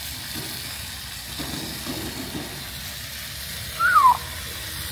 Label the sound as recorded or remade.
recorded